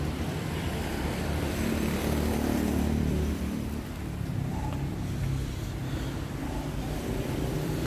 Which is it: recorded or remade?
remade